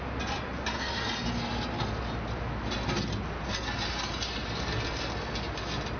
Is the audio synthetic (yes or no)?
no